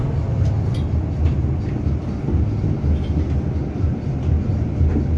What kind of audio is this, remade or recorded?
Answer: recorded